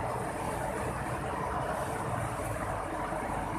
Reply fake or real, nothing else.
fake